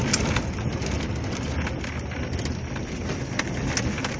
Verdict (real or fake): real